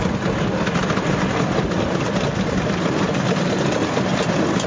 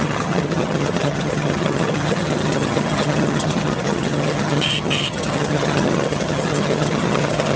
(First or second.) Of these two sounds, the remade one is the second